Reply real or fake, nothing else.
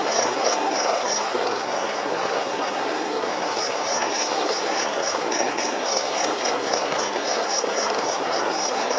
fake